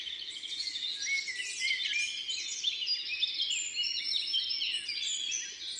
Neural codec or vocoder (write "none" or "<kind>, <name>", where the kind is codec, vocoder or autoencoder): none